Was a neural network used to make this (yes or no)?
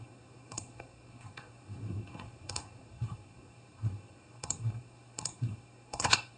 yes